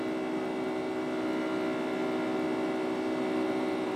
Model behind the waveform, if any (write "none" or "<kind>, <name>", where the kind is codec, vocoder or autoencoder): none